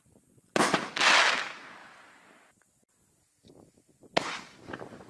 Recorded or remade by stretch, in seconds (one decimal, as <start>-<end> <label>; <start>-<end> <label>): 0.0-5.1 recorded